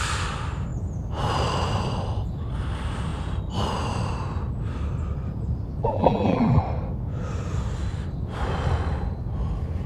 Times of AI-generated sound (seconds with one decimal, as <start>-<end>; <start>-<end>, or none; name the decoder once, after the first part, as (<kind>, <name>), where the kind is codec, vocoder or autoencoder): 5.8-6.6 (vocoder, BigVGAN v2)